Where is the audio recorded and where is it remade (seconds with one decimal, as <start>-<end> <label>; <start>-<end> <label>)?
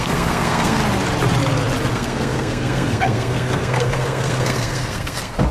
0.0-0.8 remade; 0.8-1.9 recorded; 1.9-5.5 remade